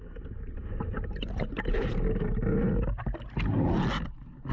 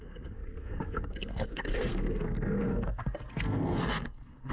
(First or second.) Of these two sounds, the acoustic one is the first